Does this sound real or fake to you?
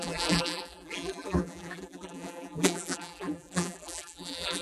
fake